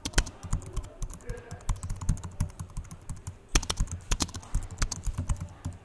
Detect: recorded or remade recorded